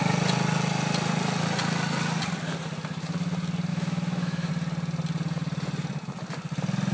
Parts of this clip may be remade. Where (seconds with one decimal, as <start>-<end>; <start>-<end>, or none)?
3.7-4.5

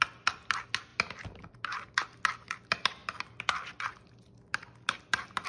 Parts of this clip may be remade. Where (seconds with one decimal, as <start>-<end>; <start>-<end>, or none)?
none

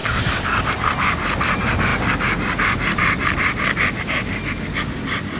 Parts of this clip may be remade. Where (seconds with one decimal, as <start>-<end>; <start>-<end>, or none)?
none

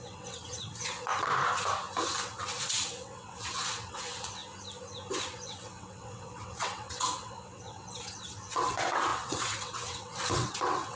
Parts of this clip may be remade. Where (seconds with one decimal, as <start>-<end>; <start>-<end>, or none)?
0.0-1.1; 2.2-4.4; 5.1-11.0